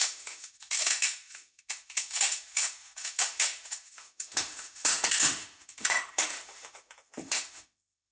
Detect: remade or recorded remade